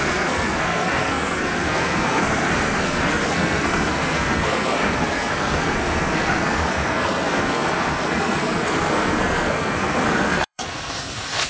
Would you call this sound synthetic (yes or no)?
yes